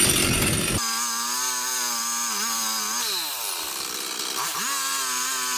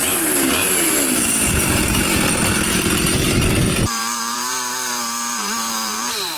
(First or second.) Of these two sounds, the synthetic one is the second